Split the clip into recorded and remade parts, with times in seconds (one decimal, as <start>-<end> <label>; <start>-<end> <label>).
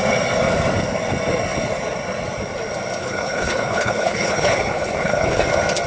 0.0-3.0 recorded; 3.0-5.4 remade; 5.4-5.9 recorded